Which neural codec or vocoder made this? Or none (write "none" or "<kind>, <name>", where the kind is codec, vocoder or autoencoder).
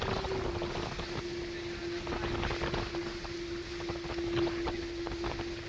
none